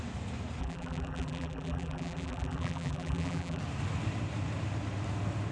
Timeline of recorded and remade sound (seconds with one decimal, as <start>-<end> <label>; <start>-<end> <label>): 0.0-0.6 recorded; 0.6-3.6 remade; 3.6-5.5 recorded